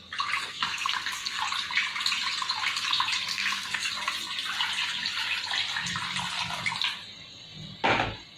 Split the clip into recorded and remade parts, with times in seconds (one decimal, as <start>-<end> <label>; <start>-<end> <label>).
0.0-0.4 recorded; 0.4-1.4 remade; 1.4-3.3 recorded; 3.3-3.9 remade; 3.9-8.4 recorded